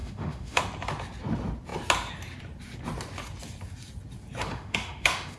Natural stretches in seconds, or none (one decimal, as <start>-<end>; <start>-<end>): 0.6-4.5

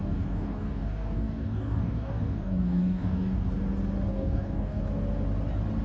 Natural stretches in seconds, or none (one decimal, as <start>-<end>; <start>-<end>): 3.5-4.1; 4.8-5.8

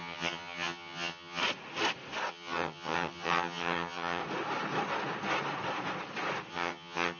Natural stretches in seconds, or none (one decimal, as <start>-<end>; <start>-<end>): 1.4-2.3; 4.2-6.5

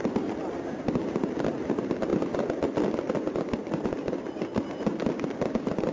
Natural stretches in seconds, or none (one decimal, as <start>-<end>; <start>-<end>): none

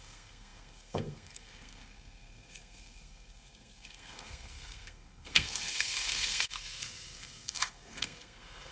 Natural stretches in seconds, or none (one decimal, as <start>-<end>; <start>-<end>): none

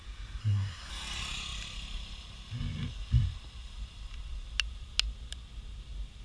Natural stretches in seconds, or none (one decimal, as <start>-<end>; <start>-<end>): 0.0-0.4; 0.9-6.2

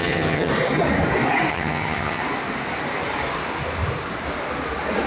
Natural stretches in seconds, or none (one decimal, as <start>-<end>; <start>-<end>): 0.5-1.5; 2.2-5.1